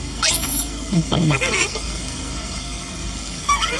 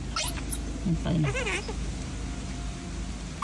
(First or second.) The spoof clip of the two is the first